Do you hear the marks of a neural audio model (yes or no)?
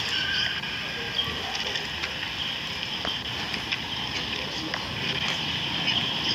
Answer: no